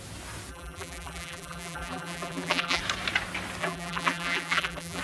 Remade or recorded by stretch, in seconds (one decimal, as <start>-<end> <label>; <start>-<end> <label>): 0.0-0.5 recorded; 0.5-2.8 remade; 2.8-3.6 recorded; 3.6-5.0 remade